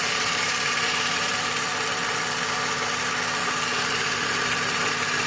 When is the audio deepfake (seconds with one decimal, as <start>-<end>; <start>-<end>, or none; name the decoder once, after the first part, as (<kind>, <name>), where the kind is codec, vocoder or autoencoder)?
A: 0.0-1.7 (vocoder, BigVGAN v2); 3.9-5.3

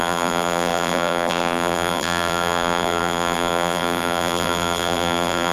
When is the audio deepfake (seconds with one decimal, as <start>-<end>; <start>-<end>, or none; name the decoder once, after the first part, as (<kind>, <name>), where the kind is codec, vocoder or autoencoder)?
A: 0.0-5.5 (vocoder, BigVGAN v2)

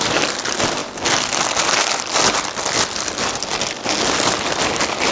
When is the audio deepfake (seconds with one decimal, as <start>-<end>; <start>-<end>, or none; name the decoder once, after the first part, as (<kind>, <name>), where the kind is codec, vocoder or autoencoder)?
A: none

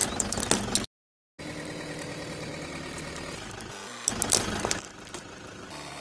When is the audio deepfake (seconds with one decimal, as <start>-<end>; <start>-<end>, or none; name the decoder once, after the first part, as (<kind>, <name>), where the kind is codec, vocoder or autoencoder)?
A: 1.4-2.5 (vocoder, BigVGAN v2); 5.5-6.0

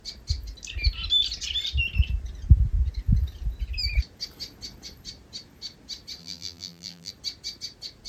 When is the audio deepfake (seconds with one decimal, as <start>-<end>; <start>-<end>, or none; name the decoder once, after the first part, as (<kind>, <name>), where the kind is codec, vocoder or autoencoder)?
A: 6.2-7.1 (vocoder, BigVGAN v2)